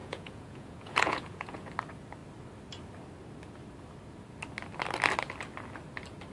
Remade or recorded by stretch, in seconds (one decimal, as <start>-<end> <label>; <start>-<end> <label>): 0.0-1.7 remade; 1.7-6.3 recorded